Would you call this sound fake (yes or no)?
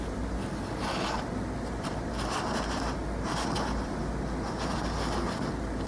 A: no